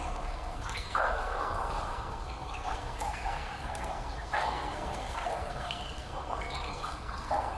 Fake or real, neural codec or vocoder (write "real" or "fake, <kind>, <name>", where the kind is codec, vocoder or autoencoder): fake, codec, SNAC